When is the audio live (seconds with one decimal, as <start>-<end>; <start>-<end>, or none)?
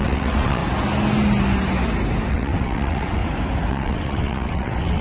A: 0.6-2.3; 3.2-3.7